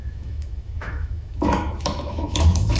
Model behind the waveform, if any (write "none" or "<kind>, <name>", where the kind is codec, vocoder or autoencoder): autoencoder, DAC-VAE